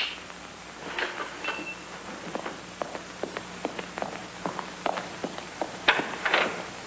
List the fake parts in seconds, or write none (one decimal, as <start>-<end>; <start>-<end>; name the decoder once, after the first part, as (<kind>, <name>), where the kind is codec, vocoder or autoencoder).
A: none